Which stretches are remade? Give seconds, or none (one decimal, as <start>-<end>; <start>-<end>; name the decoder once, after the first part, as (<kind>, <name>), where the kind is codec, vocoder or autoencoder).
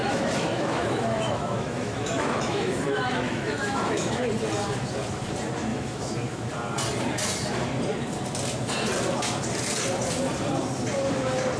0.0-4.3 (autoencoder, DAC-VAE); 5.7-6.5